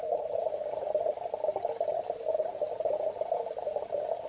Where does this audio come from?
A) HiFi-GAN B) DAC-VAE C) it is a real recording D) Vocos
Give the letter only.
C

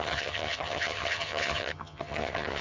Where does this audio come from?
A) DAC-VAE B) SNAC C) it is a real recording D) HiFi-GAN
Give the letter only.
D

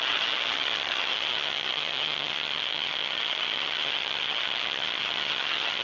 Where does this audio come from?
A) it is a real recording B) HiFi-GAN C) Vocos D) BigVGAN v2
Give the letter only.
B